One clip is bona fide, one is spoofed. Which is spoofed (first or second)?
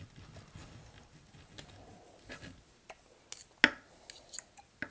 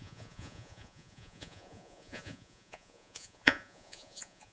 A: second